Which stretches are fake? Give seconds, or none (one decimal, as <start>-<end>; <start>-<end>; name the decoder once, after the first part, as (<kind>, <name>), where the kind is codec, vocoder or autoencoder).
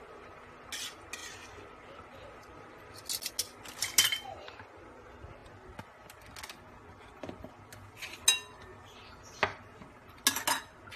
none